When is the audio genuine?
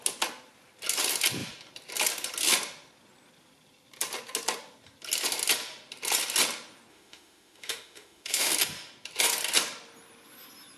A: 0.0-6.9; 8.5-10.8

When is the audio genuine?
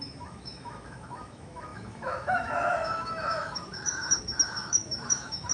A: none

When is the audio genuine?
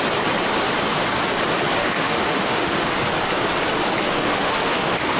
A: 0.0-1.8; 2.9-4.3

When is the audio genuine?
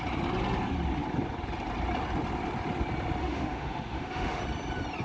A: 0.0-3.2; 4.4-5.0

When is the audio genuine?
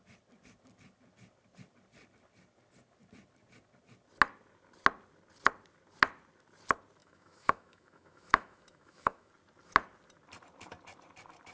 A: 0.0-7.0; 9.3-11.5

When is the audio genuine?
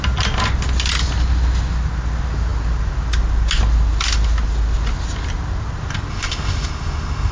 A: 0.0-6.1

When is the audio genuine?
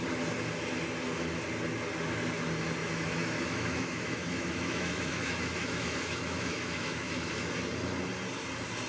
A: 0.0-2.8; 7.5-8.9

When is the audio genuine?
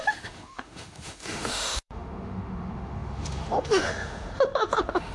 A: none